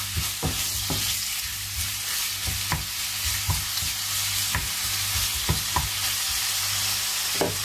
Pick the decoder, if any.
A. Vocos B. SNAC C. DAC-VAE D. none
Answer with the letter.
D